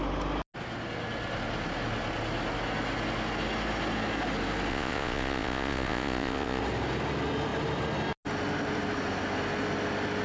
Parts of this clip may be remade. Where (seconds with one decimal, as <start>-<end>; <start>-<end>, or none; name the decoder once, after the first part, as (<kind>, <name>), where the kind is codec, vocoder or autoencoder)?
4.7-6.6 (vocoder, Vocos)